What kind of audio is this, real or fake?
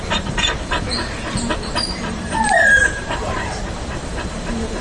fake